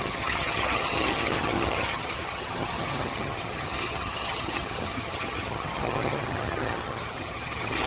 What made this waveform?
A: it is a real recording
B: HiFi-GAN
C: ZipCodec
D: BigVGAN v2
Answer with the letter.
B